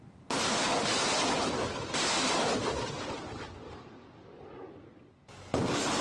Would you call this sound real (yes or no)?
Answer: yes